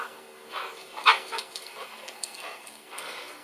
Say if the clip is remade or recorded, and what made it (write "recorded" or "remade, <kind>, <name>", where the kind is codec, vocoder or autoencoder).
remade, codec, SNAC